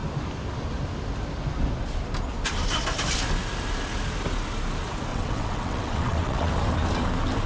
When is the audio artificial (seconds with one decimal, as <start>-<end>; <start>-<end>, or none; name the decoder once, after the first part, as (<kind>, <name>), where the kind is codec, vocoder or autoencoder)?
5.1-6.5 (vocoder, WaveNeXt)